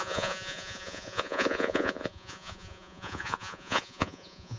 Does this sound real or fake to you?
fake